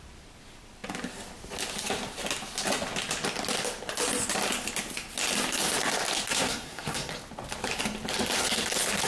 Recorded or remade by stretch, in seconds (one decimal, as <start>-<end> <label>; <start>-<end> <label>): 0.0-6.3 recorded; 6.3-7.1 remade; 7.1-9.1 recorded